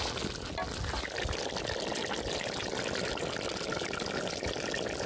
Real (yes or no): yes